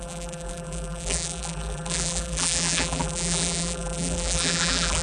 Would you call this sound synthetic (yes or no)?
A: yes